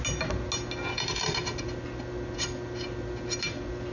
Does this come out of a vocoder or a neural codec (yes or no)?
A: no